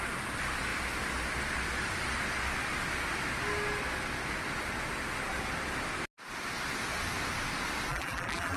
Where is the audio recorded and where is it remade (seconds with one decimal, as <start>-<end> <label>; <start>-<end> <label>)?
0.0-7.9 recorded; 7.9-8.6 remade